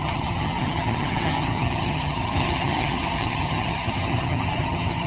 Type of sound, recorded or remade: remade